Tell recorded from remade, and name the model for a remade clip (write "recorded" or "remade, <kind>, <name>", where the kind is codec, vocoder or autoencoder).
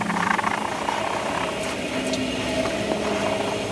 recorded